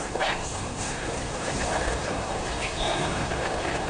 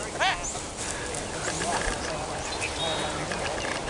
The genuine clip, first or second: second